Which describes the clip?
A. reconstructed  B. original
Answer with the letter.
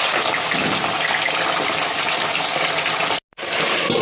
B